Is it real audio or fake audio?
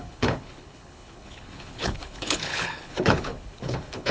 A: fake